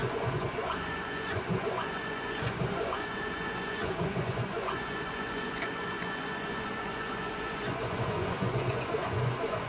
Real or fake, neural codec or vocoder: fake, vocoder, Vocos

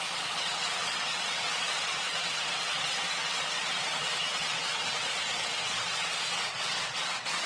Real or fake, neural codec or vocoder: fake, vocoder, WaveNeXt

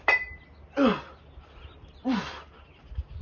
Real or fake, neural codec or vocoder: real